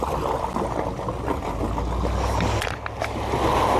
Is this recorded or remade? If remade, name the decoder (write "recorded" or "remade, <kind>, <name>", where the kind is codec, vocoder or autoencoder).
recorded